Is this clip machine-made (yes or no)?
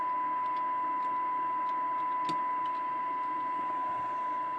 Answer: no